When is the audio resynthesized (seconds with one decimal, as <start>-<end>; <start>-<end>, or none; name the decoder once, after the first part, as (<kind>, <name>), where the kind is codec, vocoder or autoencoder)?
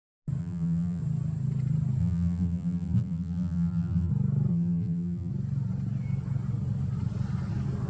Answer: 0.4-1.0 (vocoder, BigVGAN v2); 2.0-4.1; 4.5-5.3